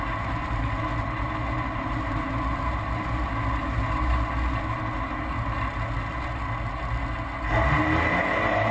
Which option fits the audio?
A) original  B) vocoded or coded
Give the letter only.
A